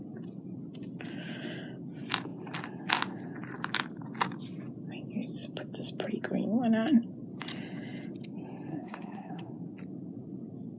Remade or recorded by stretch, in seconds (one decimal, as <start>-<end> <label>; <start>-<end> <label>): 0.0-8.7 recorded; 8.7-9.5 remade; 9.5-10.8 recorded

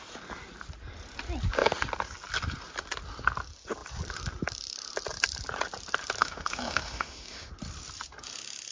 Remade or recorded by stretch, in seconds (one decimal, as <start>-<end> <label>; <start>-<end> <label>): 0.0-6.2 recorded; 6.2-7.5 remade; 7.5-8.7 recorded

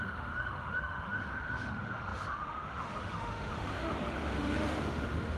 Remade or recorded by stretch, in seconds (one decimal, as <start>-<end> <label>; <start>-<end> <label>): 0.0-5.4 remade

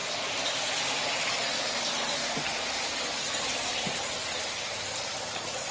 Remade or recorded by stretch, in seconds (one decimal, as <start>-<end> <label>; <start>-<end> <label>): 0.0-1.1 remade; 1.1-2.2 recorded; 2.2-5.7 remade

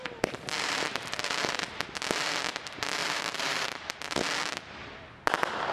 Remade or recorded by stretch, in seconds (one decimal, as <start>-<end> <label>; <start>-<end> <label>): 0.0-0.9 remade; 0.9-3.0 recorded; 3.0-3.8 remade; 3.8-5.7 recorded

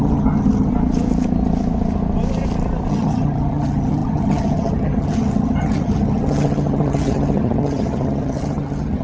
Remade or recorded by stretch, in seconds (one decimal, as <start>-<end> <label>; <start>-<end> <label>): 0.0-0.7 remade; 0.7-2.9 recorded; 2.9-9.0 remade

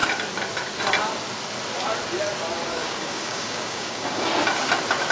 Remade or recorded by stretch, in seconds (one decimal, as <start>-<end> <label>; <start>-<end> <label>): 0.0-2.7 recorded; 2.7-4.2 remade; 4.2-5.1 recorded